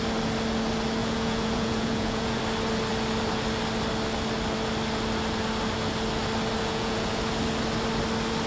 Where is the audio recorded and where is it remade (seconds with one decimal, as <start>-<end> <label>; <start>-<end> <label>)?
0.0-1.0 recorded; 1.0-2.4 remade; 2.4-6.6 recorded; 6.6-7.2 remade; 7.2-8.5 recorded